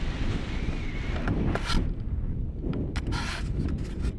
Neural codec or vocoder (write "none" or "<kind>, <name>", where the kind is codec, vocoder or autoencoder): none